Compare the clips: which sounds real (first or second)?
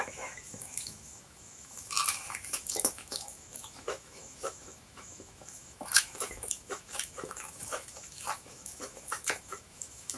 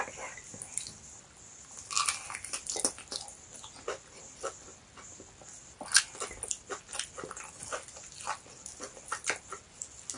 second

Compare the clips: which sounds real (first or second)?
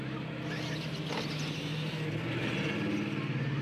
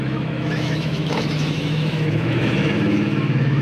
first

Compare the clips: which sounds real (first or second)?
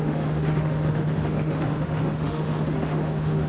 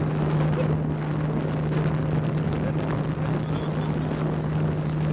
second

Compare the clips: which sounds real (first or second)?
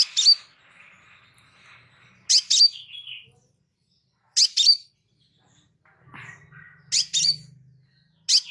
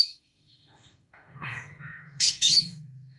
first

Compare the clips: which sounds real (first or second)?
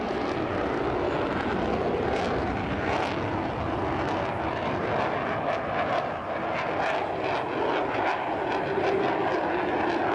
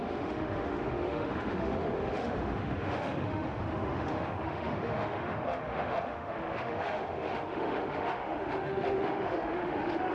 first